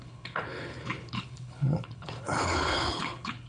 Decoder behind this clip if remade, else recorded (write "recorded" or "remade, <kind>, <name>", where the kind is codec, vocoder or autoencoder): remade, codec, HILCodec